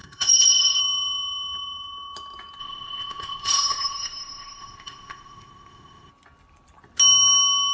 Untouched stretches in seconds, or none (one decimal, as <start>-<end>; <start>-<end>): 0.8-2.6; 6.1-7.7